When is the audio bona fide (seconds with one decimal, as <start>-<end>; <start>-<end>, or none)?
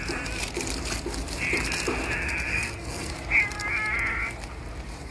0.0-2.5; 3.1-5.1